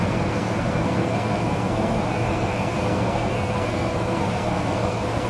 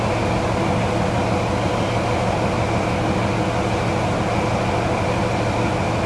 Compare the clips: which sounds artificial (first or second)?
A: first